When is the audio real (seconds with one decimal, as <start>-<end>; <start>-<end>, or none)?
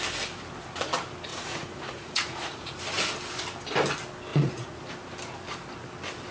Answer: 0.0-1.3; 2.8-4.3; 4.8-6.3